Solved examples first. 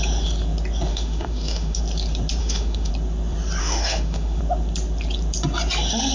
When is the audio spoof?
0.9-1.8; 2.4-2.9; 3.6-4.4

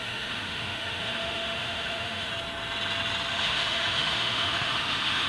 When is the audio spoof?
0.0-2.3; 3.3-5.3

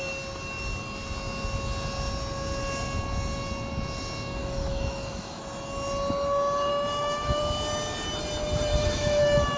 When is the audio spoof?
4.4-5.4; 6.7-7.4; 8.7-9.6

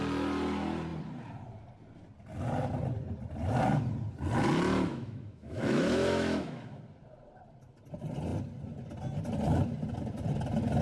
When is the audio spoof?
4.9-6.8